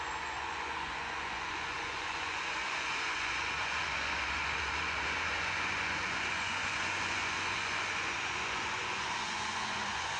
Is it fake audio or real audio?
fake